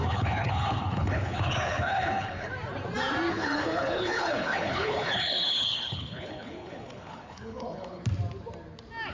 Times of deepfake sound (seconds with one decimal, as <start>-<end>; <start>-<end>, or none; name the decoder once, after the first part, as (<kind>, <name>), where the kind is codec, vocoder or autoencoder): 0.0-2.5 (codec, HILCodec); 3.3-8.0